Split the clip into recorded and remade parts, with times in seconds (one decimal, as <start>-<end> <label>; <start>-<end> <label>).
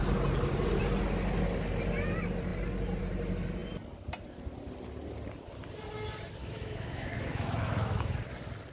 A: 0.0-6.4 recorded; 6.4-8.2 remade; 8.2-8.7 recorded